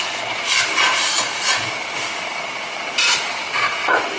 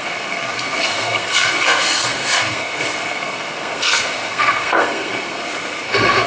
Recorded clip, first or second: first